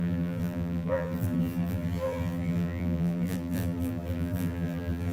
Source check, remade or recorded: remade